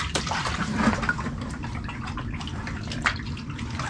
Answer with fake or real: real